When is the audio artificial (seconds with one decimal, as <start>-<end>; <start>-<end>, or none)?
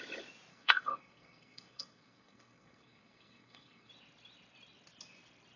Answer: 0.5-3.9